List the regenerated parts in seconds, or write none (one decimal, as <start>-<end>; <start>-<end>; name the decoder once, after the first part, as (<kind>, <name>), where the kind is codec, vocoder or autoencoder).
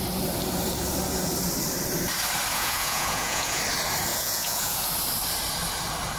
2.5-3.6 (vocoder, Vocos); 4.1-4.9